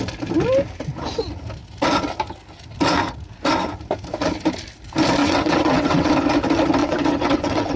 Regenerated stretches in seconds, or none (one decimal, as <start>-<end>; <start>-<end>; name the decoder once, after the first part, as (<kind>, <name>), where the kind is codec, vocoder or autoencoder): 5.2-6.1 (vocoder, WaveNeXt); 6.8-7.8